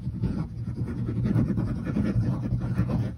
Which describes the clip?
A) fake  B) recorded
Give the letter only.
A